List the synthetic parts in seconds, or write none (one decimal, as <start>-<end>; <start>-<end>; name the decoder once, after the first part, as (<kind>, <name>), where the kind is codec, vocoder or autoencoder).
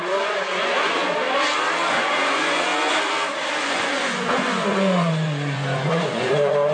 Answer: 0.0-1.0 (vocoder, Vocos); 1.9-2.7; 3.6-6.7